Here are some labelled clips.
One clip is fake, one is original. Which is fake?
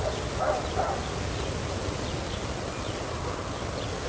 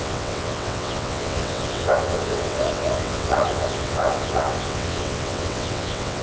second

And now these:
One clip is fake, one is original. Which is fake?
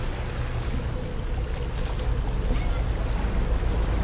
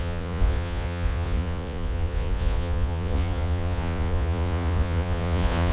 second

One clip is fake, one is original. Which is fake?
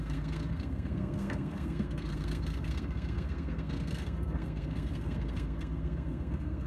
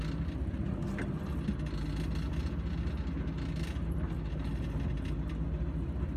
first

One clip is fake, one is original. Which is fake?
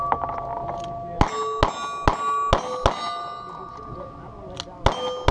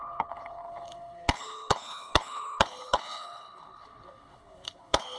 second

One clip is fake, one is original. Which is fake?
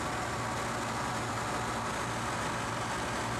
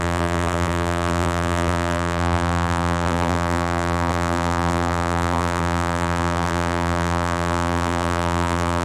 second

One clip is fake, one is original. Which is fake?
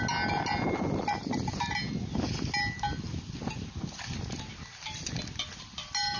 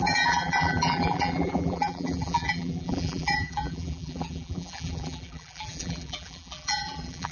second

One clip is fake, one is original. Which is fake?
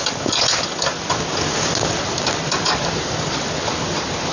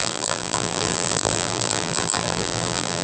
second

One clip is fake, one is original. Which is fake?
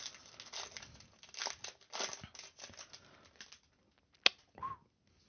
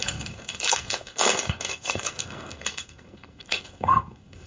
second